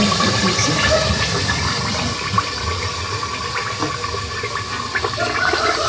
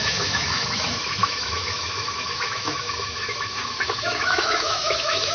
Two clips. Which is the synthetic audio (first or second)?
second